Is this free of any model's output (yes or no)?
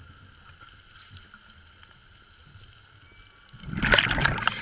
yes